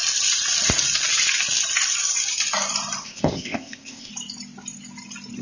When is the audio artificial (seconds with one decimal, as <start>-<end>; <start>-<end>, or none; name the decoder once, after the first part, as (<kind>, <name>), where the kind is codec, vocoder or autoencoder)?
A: 3.0-4.1 (codec, ZipCodec)